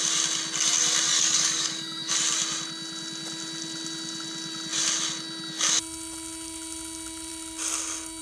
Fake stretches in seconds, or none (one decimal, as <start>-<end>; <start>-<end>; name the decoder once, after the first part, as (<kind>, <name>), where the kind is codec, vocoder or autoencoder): 1.1-2.1 (codec, DAC)